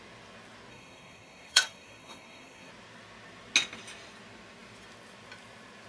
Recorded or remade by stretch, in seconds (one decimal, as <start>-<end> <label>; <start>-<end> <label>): 0.0-0.7 recorded; 0.7-2.7 remade; 2.7-5.9 recorded